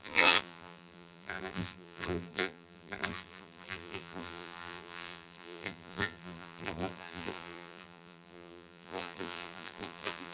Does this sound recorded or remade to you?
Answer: remade